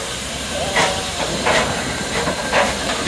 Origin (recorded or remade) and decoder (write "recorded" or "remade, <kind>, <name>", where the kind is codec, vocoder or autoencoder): remade, vocoder, BigVGAN v2